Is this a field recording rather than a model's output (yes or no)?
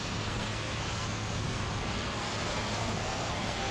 no